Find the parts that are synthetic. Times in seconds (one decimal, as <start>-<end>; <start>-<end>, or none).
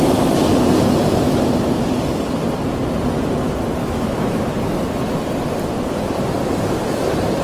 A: 3.8-4.4